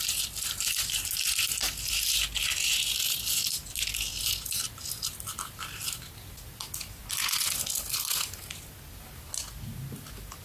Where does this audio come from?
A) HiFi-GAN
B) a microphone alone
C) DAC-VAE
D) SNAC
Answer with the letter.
B